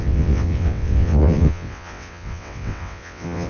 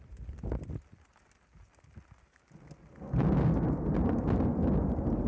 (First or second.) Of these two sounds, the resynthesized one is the first